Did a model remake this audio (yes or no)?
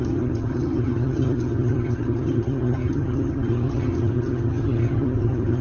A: yes